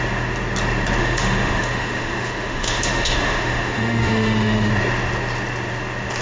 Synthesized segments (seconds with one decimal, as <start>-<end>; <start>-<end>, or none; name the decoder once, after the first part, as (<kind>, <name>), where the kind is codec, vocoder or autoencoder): 1.0-4.7 (autoencoder, DAC-VAE)